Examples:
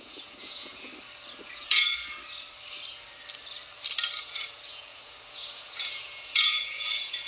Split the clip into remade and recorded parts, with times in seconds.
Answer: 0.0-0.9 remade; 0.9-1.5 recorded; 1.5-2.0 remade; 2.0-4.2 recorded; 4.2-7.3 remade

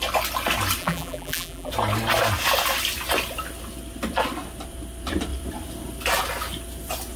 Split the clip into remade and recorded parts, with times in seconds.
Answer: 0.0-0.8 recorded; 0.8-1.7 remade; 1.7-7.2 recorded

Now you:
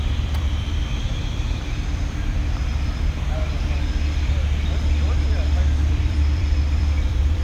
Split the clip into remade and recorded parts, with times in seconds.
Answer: 0.0-1.2 remade; 1.2-2.0 recorded; 2.0-2.7 remade; 2.7-5.9 recorded; 5.9-7.4 remade

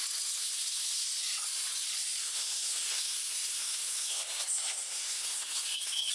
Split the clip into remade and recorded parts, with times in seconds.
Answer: 0.0-0.4 recorded; 0.4-1.1 remade; 1.1-2.2 recorded; 2.2-6.1 remade